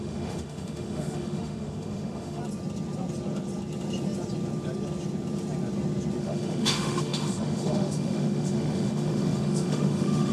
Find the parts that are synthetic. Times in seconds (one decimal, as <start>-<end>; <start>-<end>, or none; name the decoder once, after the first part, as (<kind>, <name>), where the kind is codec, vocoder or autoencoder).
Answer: 0.0-2.4 (autoencoder, DAC-VAE); 6.2-10.3